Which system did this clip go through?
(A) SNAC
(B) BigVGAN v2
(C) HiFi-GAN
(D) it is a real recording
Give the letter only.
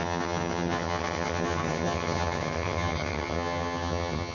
C